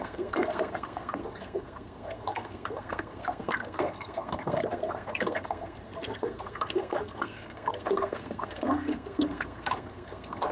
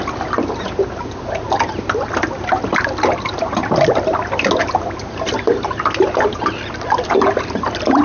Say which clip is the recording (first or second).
second